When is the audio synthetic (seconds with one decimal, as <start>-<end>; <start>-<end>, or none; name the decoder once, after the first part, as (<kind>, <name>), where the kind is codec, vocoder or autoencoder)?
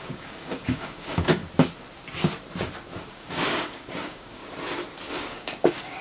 0.0-1.4 (codec, DAC); 3.1-4.4; 5.1-6.0